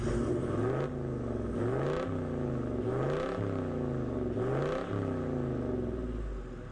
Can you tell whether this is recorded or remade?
recorded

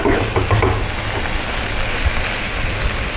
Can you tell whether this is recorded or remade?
recorded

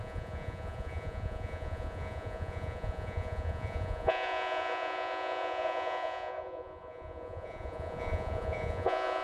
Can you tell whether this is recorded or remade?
remade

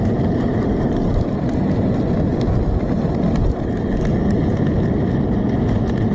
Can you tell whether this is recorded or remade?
recorded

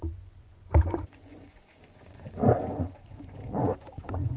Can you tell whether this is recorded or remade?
remade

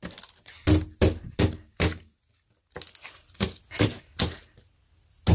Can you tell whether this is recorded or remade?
recorded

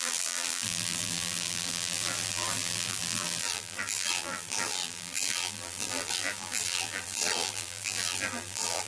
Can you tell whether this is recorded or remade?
remade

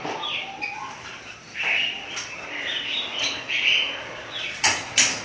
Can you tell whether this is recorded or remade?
remade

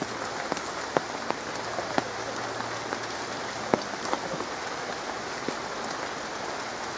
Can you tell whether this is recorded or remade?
recorded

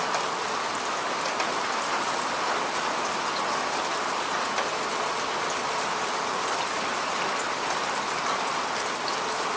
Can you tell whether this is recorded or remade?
recorded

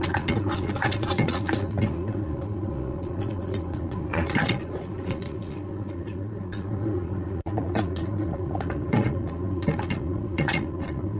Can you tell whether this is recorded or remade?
remade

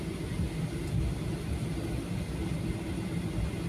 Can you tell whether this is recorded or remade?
recorded